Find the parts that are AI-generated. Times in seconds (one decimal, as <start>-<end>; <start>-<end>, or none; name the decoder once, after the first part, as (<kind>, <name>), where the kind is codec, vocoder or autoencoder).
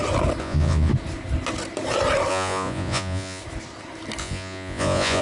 0.4-0.9 (vocoder, Vocos); 2.3-3.4; 4.2-5.2